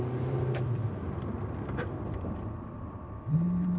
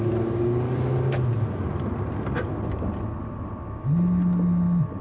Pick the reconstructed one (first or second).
first